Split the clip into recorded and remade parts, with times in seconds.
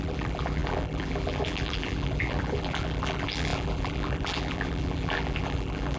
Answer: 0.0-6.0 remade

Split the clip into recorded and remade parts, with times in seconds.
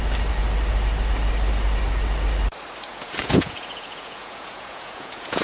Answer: 0.0-2.9 recorded; 2.9-5.4 remade